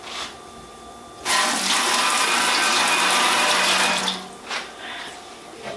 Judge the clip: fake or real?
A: fake